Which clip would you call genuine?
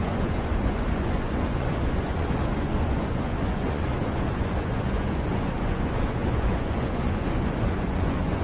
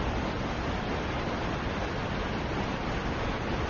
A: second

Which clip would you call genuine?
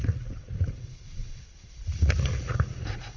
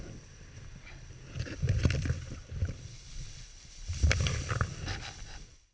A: second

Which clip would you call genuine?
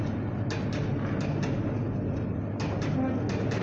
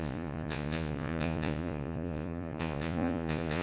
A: first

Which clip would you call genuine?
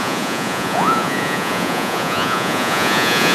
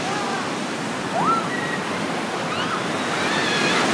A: second